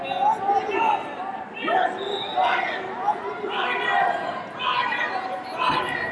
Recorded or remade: recorded